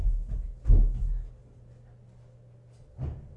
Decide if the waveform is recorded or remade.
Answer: recorded